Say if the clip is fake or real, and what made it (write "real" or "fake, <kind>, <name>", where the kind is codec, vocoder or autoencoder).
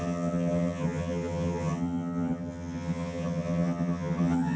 fake, vocoder, HiFi-GAN